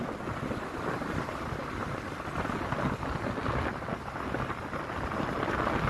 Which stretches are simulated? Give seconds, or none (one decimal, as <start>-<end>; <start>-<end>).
none